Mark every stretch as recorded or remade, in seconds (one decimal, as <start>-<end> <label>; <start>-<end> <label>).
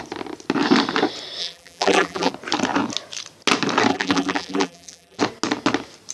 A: 0.0-1.4 recorded; 1.4-2.3 remade; 2.3-3.9 recorded; 3.9-5.2 remade; 5.2-6.1 recorded